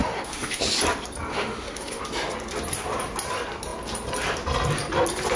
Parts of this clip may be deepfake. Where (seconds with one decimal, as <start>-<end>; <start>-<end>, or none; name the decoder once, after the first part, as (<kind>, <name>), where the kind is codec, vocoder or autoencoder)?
0.0-0.6 (autoencoder, DAC-VAE); 1.3-2.0